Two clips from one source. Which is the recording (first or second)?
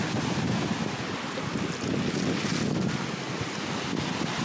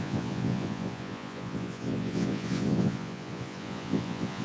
first